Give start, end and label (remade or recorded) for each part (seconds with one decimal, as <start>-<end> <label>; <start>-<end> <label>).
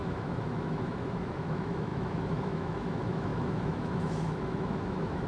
0.0-5.3 remade